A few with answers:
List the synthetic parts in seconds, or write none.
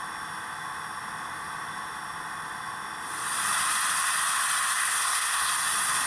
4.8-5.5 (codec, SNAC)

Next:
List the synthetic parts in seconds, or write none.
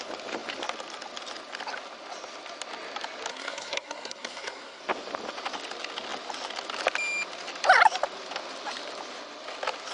3.3-4.8 (codec, SNAC)